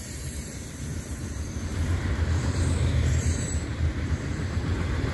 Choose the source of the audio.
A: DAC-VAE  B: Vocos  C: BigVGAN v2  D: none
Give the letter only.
C